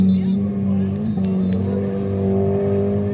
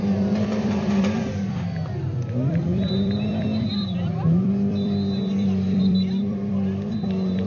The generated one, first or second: second